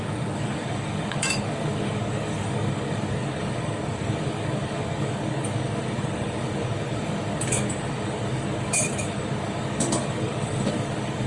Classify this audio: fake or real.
fake